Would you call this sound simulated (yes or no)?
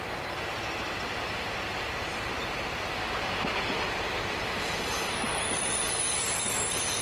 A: no